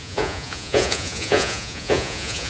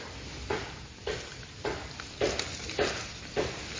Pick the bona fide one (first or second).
second